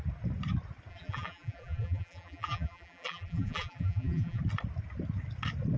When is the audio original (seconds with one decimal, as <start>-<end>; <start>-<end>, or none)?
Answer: 0.0-0.9; 4.4-5.8